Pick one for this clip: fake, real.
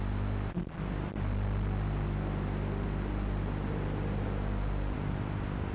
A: real